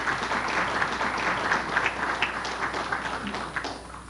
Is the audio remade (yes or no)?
no